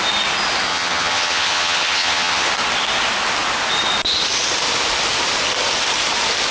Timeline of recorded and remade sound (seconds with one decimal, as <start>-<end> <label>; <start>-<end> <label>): 0.0-0.7 recorded; 0.7-2.5 remade; 2.5-6.5 recorded